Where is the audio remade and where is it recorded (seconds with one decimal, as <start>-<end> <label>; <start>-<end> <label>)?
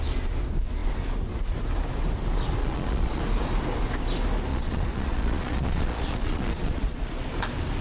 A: 0.0-2.6 recorded; 2.6-3.2 remade; 3.2-4.5 recorded; 4.5-7.1 remade; 7.1-7.8 recorded